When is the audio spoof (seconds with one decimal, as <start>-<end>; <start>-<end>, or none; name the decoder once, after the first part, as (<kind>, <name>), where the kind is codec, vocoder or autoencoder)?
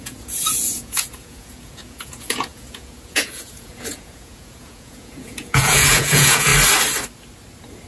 0.0-6.5 (vocoder, Vocos)